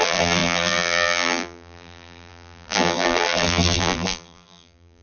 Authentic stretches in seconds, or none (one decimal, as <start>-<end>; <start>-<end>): none